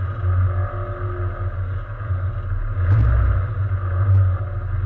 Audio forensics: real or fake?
real